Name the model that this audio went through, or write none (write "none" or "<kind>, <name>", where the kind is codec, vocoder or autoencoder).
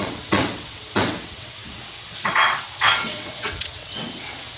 vocoder, WaveNeXt